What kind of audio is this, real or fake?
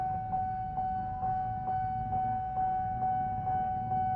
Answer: fake